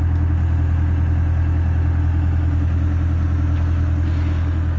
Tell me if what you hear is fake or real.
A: real